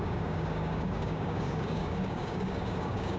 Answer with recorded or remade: remade